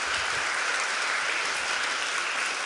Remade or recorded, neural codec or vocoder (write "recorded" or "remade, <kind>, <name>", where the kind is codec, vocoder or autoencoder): recorded